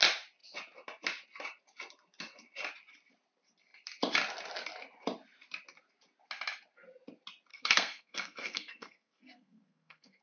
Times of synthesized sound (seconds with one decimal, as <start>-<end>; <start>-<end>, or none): 7.5-10.2